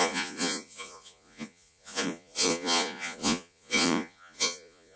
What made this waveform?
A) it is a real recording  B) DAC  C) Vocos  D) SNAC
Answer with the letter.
C